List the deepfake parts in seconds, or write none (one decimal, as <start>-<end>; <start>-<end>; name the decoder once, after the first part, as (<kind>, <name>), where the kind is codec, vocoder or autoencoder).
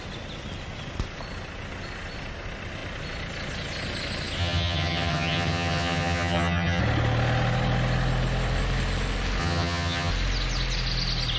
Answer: 4.4-6.8 (vocoder, HiFi-GAN); 9.4-10.1